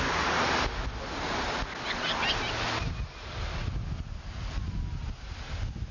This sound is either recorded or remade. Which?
recorded